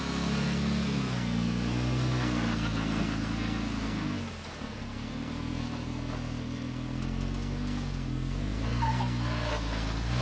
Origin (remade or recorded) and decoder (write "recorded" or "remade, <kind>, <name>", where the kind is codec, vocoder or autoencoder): remade, codec, SNAC